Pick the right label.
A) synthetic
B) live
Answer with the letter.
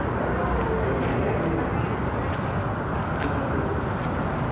B